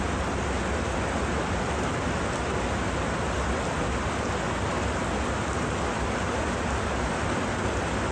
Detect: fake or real real